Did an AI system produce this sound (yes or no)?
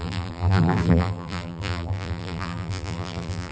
yes